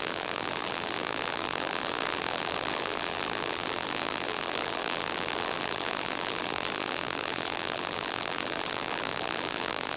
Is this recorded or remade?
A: remade